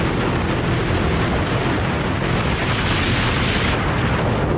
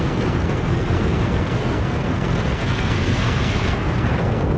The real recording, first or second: first